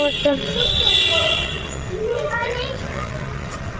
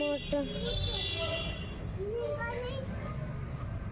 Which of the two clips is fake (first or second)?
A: first